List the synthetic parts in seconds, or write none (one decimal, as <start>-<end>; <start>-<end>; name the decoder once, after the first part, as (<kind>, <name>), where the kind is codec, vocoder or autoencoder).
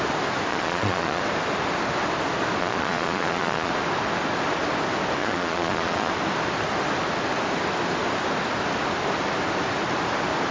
0.5-1.2 (vocoder, Vocos); 2.6-3.7; 5.2-6.1